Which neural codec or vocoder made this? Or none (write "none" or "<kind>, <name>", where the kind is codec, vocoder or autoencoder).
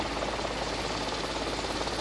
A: none